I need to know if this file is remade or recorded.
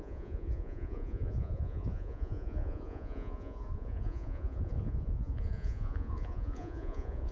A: remade